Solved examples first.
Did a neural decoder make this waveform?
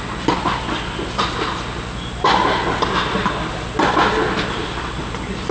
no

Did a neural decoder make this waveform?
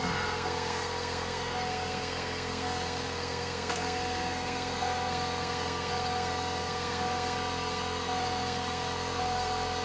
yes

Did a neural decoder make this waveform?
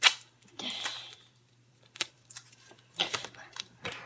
yes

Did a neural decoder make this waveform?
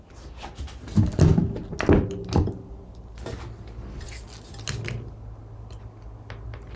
no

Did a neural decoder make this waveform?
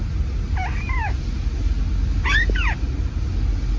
no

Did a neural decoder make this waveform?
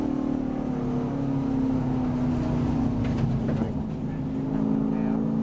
no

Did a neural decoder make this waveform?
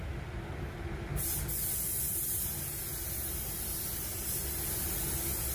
no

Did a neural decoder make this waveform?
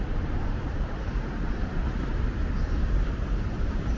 yes